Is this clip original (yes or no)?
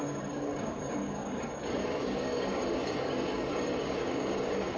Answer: no